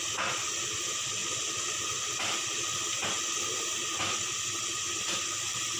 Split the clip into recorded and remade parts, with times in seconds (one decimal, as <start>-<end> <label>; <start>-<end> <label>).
0.0-5.8 recorded